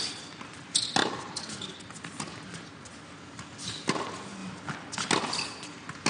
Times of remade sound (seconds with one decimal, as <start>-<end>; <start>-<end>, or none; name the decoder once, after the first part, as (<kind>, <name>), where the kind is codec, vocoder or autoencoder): none